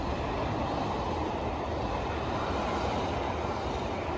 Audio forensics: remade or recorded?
recorded